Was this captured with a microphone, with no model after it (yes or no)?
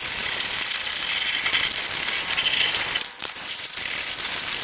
yes